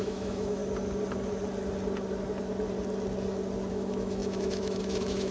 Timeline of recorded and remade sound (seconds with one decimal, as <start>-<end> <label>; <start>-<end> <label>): 0.0-0.6 remade; 0.6-3.7 recorded; 3.7-5.3 remade